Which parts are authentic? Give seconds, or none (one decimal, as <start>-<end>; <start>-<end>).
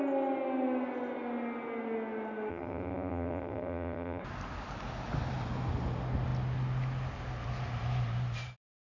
0.0-2.5; 4.2-8.8